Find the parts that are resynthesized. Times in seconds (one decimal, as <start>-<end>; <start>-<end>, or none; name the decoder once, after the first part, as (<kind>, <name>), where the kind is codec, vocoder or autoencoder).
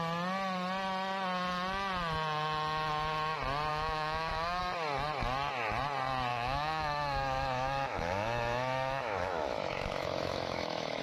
3.7-4.6 (autoencoder, DAC-VAE); 6.3-11.0